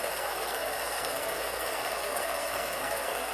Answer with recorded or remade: remade